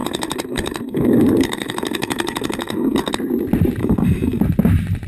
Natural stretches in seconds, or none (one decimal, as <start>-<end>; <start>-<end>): 3.1-3.8; 4.4-5.1